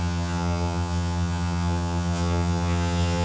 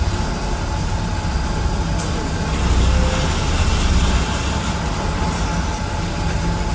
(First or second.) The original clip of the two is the second